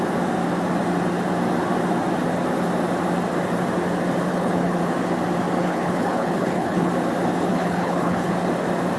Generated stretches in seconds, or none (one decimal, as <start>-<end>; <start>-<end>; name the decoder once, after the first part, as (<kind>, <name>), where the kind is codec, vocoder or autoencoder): 4.3-4.8 (codec, HILCodec); 5.6-6.9; 7.5-8.3